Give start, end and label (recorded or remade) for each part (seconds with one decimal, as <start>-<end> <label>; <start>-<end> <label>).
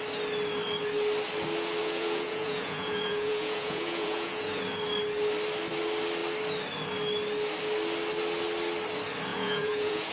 0.0-1.8 recorded; 1.8-4.6 remade; 4.6-9.3 recorded; 9.3-10.1 remade